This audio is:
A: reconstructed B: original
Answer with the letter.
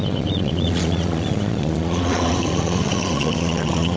A